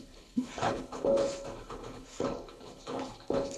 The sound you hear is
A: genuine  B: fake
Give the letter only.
B